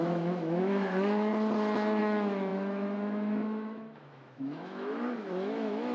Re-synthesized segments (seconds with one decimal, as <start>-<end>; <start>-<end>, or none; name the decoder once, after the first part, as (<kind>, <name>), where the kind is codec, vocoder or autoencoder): 0.0-1.3 (autoencoder, DAC-VAE); 2.0-5.9